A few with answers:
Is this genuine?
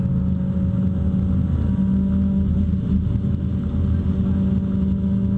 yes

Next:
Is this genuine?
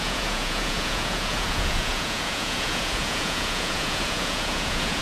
no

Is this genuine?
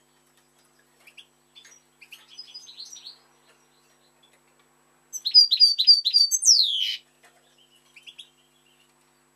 yes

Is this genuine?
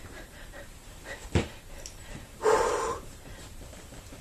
no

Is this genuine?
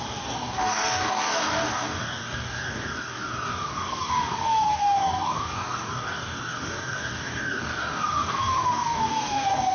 no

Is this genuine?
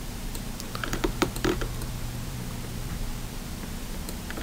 no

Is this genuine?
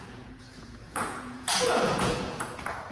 no